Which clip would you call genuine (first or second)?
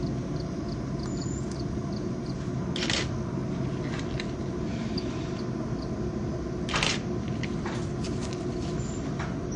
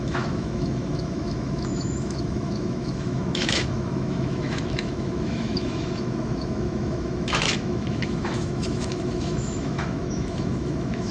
first